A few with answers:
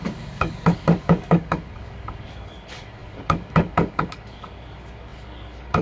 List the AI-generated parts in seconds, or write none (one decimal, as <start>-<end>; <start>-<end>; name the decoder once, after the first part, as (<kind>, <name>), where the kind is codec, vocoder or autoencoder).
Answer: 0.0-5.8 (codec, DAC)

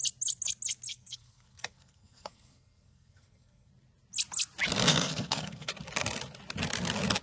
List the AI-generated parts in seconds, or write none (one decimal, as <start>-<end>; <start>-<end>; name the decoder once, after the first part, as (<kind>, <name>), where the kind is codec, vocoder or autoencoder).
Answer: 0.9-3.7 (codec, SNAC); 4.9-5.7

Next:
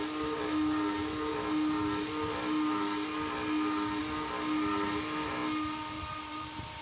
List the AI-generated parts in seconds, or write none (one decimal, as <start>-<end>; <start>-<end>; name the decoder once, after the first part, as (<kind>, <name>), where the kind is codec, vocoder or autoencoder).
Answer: none

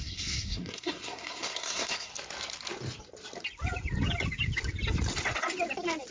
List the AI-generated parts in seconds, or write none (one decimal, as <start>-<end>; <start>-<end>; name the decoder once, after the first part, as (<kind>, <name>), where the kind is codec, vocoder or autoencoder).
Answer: 0.0-2.1 (codec, SNAC)

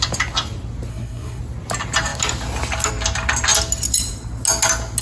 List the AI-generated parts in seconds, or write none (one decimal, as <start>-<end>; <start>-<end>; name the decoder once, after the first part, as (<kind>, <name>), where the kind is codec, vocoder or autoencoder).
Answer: 0.9-1.4 (codec, SNAC)

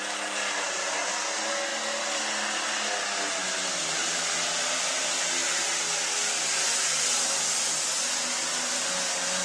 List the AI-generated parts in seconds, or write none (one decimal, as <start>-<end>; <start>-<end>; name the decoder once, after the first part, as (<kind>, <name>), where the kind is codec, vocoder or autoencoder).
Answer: none